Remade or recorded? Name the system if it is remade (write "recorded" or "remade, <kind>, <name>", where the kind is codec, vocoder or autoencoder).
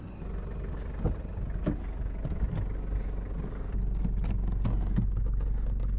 recorded